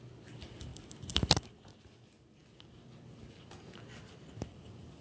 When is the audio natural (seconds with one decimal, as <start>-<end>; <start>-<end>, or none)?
0.0-0.7; 1.6-5.0